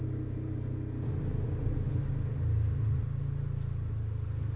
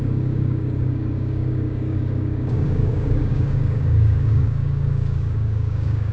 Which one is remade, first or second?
second